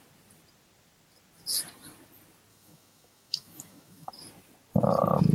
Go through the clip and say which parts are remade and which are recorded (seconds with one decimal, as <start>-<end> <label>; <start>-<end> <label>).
0.0-2.5 recorded; 2.5-4.1 remade; 4.1-5.3 recorded